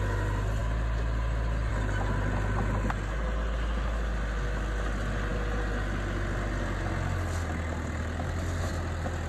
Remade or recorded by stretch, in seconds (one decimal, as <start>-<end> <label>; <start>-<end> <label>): 0.0-9.3 recorded

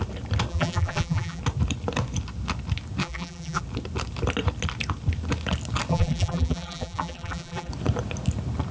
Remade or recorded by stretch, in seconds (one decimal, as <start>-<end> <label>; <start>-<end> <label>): 0.0-0.5 recorded; 0.5-1.4 remade; 1.4-3.0 recorded; 3.0-3.6 remade; 3.6-5.9 recorded; 5.9-7.7 remade; 7.7-8.7 recorded

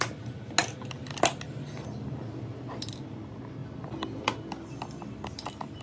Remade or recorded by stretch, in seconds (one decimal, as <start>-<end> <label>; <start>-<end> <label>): 0.0-5.8 recorded